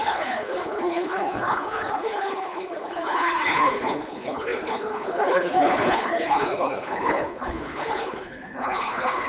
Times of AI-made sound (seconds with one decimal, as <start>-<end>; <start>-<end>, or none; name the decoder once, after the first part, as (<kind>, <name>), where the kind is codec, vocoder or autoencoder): 0.0-9.3 (codec, HILCodec)